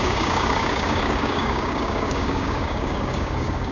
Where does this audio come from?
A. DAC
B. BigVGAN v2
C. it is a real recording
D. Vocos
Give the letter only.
A